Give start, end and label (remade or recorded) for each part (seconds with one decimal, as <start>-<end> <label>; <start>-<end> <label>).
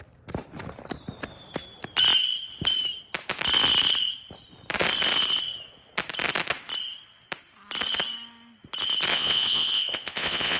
0.0-9.1 recorded; 9.1-10.6 remade